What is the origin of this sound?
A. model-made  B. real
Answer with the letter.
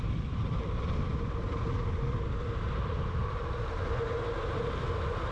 B